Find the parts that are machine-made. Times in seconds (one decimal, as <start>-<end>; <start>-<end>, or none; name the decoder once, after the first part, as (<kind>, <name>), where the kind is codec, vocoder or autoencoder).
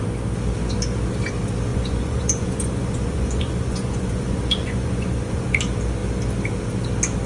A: 1.7-5.6 (vocoder, Vocos)